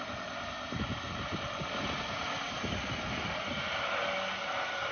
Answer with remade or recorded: recorded